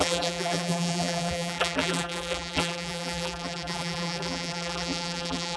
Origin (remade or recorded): remade